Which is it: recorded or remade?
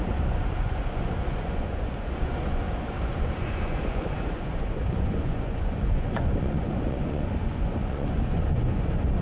remade